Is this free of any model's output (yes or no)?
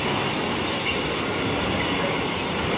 yes